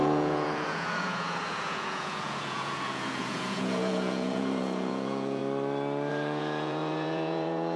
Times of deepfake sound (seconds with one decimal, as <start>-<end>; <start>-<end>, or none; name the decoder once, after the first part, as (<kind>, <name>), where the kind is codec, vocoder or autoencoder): 0.0-5.4 (vocoder, Vocos); 6.1-7.8

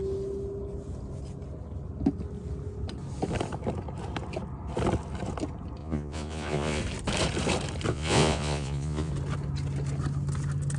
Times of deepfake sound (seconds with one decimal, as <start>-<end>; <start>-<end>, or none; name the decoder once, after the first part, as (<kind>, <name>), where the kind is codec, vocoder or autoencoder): 5.8-6.8 (vocoder, Vocos); 7.9-9.1

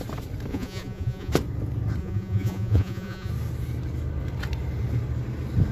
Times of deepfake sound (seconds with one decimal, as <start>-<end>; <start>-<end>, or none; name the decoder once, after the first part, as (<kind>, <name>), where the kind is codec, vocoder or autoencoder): 0.5-1.3 (vocoder, Vocos); 2.0-3.3

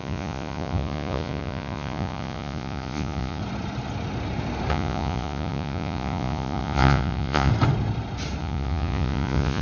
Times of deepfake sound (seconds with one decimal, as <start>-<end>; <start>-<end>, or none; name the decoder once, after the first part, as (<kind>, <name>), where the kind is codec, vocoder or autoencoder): 0.0-3.4 (vocoder, Vocos); 4.7-7.5; 8.4-9.6

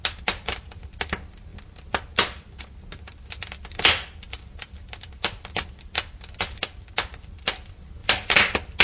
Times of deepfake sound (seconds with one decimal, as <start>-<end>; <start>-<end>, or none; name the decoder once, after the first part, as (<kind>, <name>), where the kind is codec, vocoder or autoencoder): none